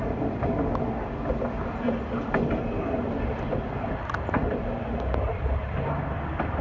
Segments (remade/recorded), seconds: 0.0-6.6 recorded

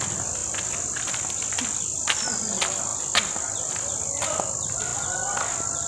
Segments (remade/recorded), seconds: 0.0-5.9 recorded

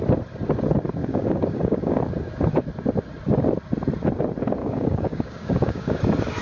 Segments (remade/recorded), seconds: 0.0-1.0 recorded; 1.0-2.0 remade; 2.0-4.6 recorded; 4.6-6.0 remade; 6.0-6.4 recorded

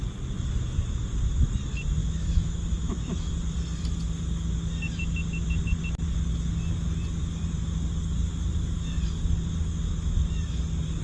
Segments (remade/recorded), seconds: 0.0-2.0 recorded; 2.0-3.4 remade; 3.4-11.0 recorded